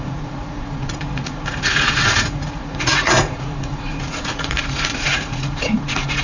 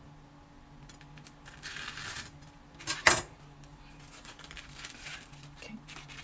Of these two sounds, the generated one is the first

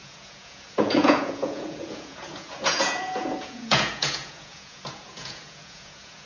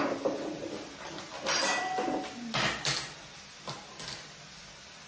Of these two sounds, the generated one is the first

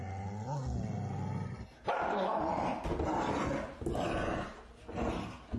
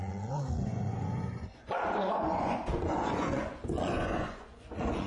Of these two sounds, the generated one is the second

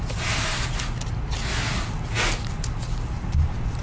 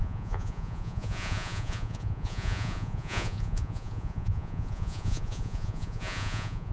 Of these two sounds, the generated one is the second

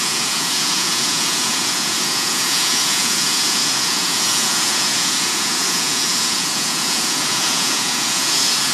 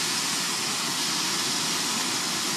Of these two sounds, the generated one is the first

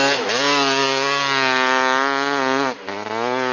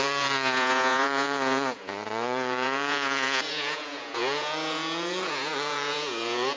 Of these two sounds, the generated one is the second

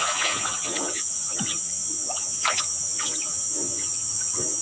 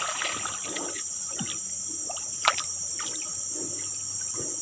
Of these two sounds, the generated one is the first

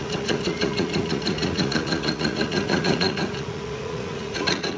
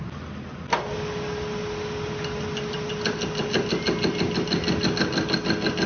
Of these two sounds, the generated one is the first